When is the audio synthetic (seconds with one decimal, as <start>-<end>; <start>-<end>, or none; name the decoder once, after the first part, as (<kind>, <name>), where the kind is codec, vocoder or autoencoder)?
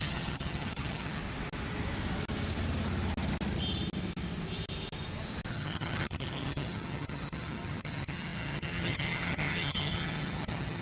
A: 0.0-1.2 (vocoder, HiFi-GAN); 5.5-10.8